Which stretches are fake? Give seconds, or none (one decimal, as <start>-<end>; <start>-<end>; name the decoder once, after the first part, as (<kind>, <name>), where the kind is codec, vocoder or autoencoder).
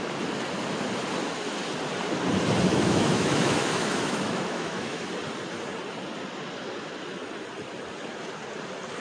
2.7-5.1 (autoencoder, DAC-VAE)